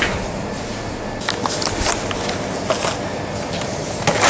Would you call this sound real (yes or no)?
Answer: yes